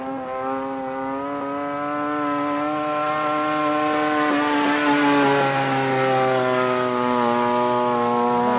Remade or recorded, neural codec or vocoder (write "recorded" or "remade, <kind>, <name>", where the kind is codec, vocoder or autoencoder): recorded